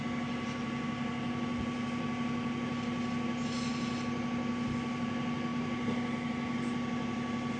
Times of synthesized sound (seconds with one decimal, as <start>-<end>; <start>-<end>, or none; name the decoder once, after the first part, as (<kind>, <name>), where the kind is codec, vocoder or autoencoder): none